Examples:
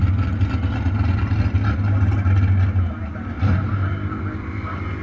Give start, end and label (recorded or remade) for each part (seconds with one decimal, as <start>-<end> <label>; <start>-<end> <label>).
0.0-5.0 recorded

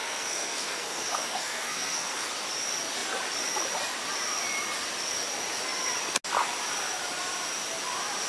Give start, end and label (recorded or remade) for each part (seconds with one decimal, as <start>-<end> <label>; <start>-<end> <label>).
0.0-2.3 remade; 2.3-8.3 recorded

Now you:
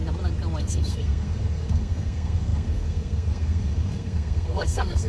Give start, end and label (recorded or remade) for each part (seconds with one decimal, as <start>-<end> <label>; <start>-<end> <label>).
0.0-0.6 recorded; 0.6-5.1 remade

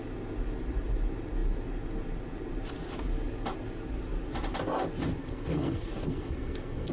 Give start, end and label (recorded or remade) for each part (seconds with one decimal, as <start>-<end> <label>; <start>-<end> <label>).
0.0-5.2 recorded; 5.2-6.9 remade